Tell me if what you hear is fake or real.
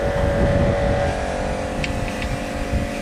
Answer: real